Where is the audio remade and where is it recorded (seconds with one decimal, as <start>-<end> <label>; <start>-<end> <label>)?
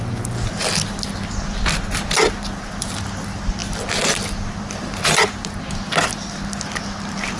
0.0-7.4 recorded